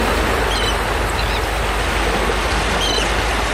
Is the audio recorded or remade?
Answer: recorded